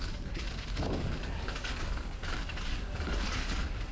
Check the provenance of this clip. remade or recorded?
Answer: remade